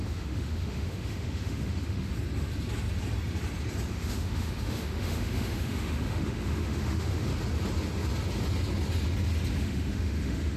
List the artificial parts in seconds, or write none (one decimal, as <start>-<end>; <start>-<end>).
0.0-2.1; 3.9-7.3; 9.6-10.6